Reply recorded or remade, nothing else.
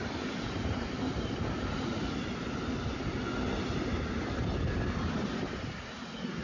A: recorded